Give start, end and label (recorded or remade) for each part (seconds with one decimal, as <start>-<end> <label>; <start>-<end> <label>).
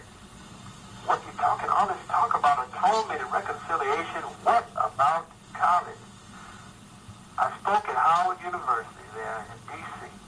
0.0-2.0 recorded; 2.0-3.2 remade; 3.2-4.4 recorded; 4.4-5.0 remade; 5.0-10.3 recorded